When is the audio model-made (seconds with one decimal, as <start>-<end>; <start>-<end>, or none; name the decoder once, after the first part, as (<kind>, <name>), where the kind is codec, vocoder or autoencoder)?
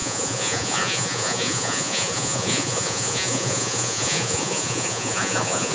0.0-5.7 (vocoder, Vocos)